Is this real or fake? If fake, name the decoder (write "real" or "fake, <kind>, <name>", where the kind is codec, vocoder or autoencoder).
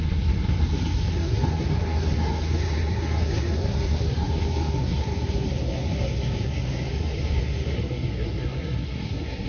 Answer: fake, codec, SNAC